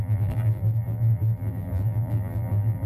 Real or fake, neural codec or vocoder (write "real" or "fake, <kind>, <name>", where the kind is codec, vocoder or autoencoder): fake, vocoder, BigVGAN v2